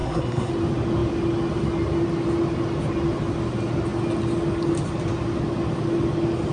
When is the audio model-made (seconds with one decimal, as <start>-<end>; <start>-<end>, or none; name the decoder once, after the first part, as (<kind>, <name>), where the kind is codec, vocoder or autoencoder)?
0.0-0.5 (codec, SNAC)